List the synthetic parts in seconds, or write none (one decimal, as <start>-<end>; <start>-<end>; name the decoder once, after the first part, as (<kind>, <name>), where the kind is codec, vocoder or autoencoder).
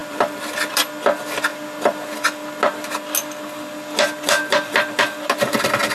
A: 0.0-0.8 (vocoder, BigVGAN v2)